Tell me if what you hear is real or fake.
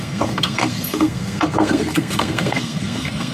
fake